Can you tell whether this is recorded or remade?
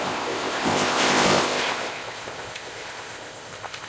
remade